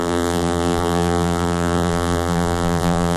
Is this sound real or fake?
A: fake